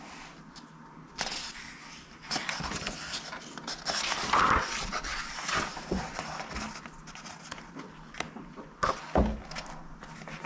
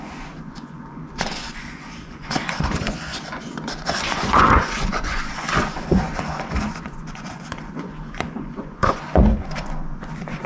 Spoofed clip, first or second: second